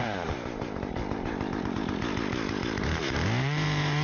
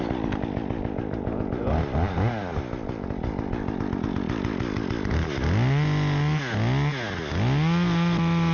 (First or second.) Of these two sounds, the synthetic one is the first